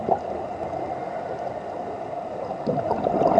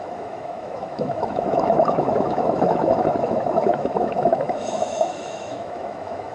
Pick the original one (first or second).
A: first